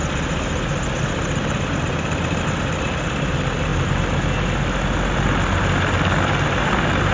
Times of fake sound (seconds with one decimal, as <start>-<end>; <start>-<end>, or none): none